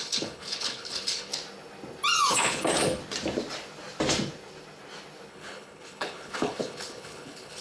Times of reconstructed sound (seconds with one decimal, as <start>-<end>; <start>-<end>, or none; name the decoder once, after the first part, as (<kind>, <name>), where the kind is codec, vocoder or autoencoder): 0.0-1.3 (codec, HILCodec); 2.3-3.0; 5.3-7.6